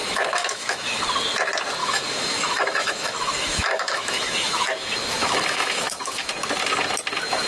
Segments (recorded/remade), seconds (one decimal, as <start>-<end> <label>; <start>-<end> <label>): 0.0-1.0 remade; 1.0-1.8 recorded; 1.8-6.3 remade; 6.3-7.5 recorded